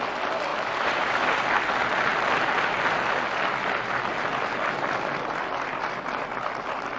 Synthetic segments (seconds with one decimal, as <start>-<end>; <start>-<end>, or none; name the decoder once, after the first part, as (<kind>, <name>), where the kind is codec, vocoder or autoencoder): 0.5-1.2 (vocoder, BigVGAN v2)